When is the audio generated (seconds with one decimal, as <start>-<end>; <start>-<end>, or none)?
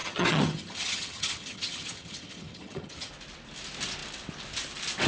0.0-3.1